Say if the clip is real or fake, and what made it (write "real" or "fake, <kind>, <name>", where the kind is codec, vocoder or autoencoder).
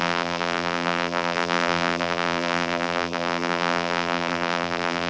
fake, vocoder, BigVGAN v2